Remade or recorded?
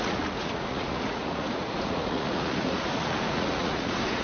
remade